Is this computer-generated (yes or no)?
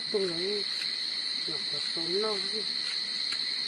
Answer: no